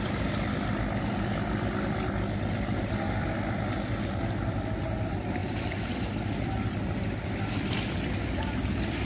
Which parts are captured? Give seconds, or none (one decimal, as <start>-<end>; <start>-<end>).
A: 0.0-9.0